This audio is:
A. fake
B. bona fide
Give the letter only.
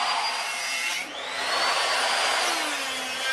B